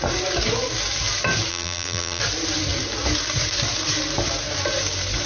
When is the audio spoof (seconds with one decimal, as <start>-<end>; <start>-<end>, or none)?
1.5-2.2